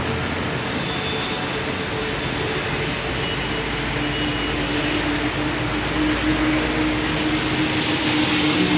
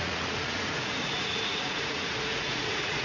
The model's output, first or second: second